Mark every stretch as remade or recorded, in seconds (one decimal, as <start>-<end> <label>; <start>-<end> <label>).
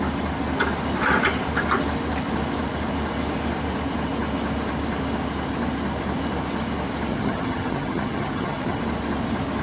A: 0.0-7.1 recorded; 7.1-8.8 remade; 8.8-9.6 recorded